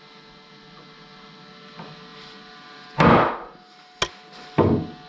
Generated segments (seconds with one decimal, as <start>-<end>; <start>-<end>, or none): none

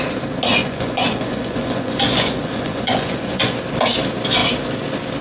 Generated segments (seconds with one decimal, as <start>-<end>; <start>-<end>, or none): 0.6-3.6